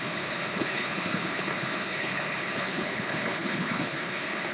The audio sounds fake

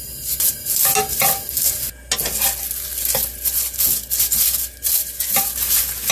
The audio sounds real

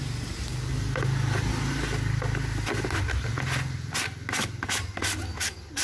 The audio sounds real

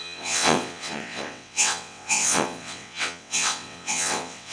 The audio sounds fake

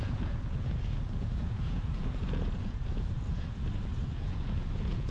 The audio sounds fake